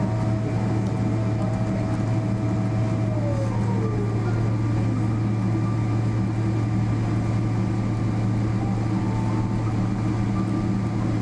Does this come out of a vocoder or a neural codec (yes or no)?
no